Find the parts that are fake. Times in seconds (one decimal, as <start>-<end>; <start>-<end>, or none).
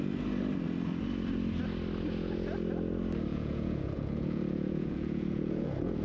3.3-6.0